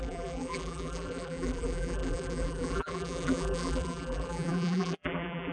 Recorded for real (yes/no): no